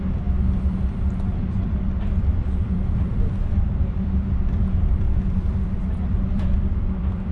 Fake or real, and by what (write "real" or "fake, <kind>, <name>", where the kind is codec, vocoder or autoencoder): fake, vocoder, BigVGAN v2